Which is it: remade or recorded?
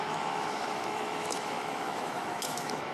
remade